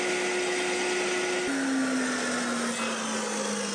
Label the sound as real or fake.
real